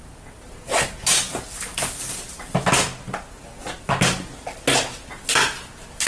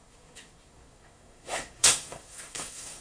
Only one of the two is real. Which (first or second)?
first